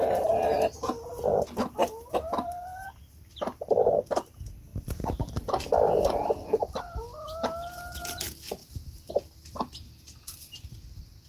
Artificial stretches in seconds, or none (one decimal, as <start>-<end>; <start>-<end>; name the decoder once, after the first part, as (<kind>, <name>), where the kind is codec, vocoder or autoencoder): 1.8-3.0 (vocoder, BigVGAN v2); 4.7-6.8